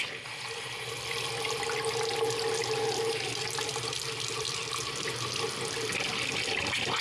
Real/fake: real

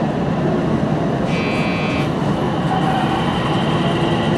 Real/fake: real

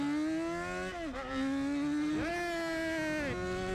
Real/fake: real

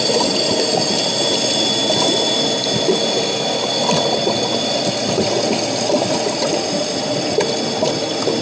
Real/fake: real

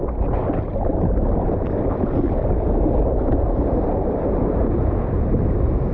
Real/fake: real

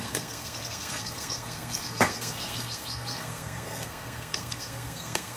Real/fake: fake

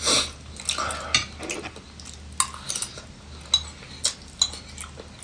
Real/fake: real